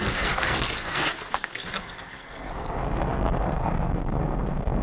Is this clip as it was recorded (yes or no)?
no